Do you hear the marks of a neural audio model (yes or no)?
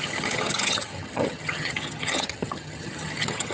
yes